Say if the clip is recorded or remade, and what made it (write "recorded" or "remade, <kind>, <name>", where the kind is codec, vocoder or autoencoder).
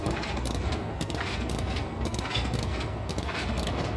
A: remade, codec, SNAC